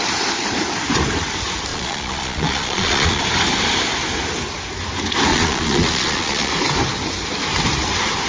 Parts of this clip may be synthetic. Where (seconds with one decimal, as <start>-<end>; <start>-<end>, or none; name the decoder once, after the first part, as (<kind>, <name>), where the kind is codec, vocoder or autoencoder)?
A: 1.7-3.2 (vocoder, Vocos); 5.3-6.5